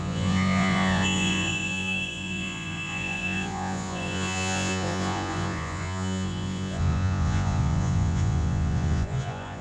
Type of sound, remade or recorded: remade